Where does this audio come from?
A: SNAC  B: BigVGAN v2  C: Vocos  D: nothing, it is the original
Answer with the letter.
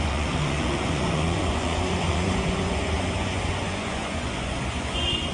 C